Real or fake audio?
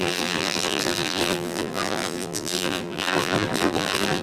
fake